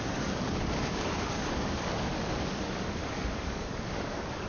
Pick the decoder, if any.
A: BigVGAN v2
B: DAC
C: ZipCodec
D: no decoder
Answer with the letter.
B